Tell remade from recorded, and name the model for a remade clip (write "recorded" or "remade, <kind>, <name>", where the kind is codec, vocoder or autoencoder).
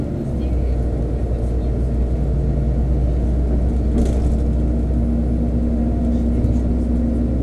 recorded